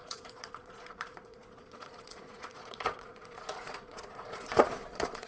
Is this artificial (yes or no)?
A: yes